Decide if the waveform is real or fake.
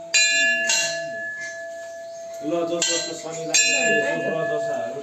real